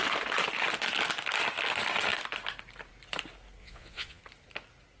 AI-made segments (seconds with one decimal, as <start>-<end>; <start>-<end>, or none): 3.6-4.2